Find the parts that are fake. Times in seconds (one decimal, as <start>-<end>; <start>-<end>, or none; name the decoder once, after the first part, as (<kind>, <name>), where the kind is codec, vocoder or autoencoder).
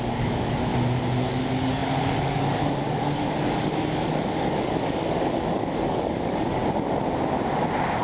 0.0-0.7 (codec, DAC); 1.3-6.6